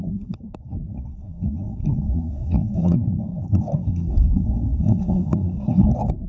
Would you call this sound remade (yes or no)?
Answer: yes